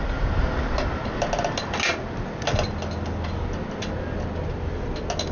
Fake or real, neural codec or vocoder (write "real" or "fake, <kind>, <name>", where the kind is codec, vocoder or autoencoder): real